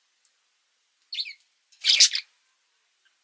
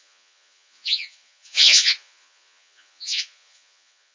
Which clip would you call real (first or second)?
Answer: first